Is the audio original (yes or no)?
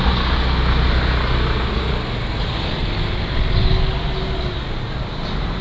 yes